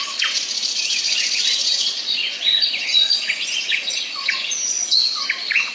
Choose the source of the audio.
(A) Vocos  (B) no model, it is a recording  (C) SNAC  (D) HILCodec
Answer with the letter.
A